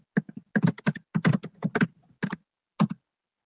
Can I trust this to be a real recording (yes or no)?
yes